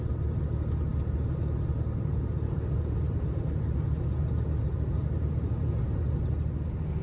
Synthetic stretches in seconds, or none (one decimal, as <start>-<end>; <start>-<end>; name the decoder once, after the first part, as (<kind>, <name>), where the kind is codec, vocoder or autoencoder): none